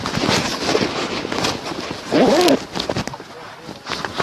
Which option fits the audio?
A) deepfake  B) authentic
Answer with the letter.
B